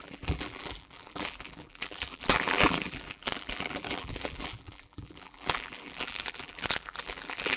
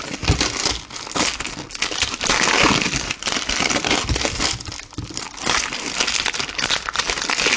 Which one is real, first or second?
second